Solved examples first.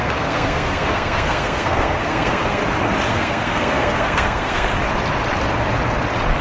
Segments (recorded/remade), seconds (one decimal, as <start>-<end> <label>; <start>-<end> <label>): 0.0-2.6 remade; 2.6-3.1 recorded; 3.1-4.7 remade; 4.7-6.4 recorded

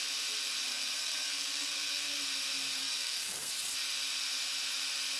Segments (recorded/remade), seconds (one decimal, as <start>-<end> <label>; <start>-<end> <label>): 0.0-0.7 recorded; 0.7-2.2 remade; 2.2-2.8 recorded; 2.8-3.5 remade; 3.5-5.2 recorded

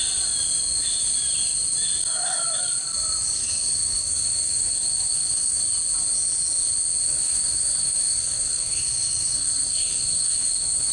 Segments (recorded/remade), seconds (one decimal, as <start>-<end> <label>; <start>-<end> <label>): 0.0-3.4 recorded; 3.4-5.6 remade; 5.6-7.0 recorded; 7.0-10.9 remade

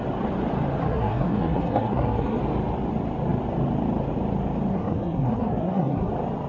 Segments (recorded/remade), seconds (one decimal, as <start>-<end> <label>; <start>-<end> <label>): 0.0-0.8 recorded; 0.8-2.4 remade; 2.4-4.7 recorded; 4.7-6.1 remade; 6.1-6.5 recorded

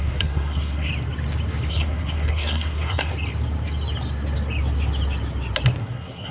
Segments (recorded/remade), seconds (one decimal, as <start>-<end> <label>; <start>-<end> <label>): 0.0-0.9 remade; 0.9-1.7 recorded; 1.7-3.1 remade; 3.1-5.8 recorded; 5.8-6.3 remade

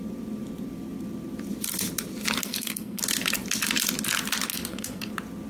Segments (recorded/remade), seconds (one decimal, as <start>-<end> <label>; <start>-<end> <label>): 0.0-2.4 recorded; 2.4-3.0 remade; 3.0-4.5 recorded; 4.5-5.1 remade; 5.1-5.5 recorded

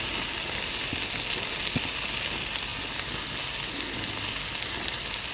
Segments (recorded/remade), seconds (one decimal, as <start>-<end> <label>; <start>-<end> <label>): 0.0-5.3 recorded

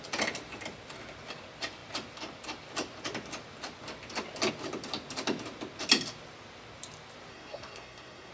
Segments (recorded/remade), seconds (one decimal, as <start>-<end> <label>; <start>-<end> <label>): 0.0-7.3 recorded; 7.3-8.3 remade